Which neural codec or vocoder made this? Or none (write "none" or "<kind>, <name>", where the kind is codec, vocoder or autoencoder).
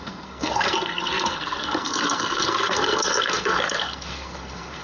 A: codec, SNAC